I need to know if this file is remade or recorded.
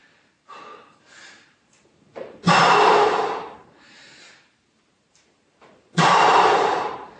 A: remade